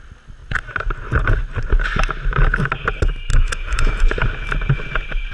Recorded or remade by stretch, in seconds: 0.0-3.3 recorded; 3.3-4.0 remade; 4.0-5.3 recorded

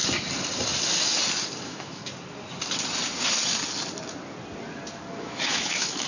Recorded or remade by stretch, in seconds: 0.0-1.6 recorded; 1.6-2.0 remade; 2.0-5.2 recorded; 5.2-6.1 remade

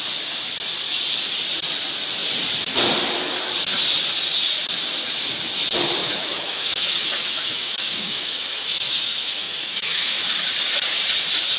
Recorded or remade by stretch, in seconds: 0.0-6.0 recorded; 6.0-10.1 remade; 10.1-11.6 recorded

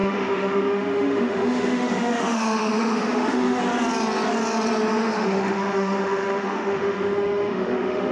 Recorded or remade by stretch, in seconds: 0.0-3.6 remade; 3.6-4.9 recorded; 4.9-8.1 remade